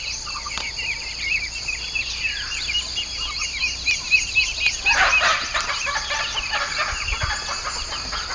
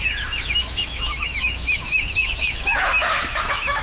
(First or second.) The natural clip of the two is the first